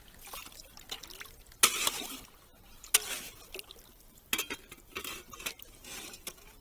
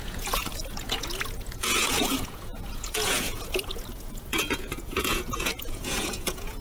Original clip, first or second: first